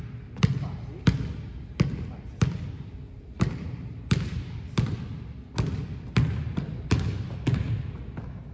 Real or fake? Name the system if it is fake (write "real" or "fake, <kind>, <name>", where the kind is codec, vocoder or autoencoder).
real